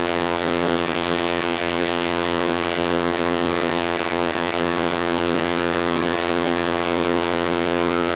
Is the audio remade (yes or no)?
yes